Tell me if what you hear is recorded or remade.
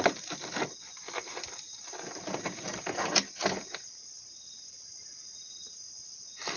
recorded